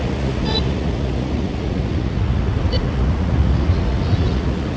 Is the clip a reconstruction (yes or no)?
yes